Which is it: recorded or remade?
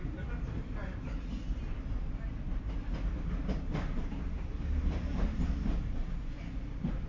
recorded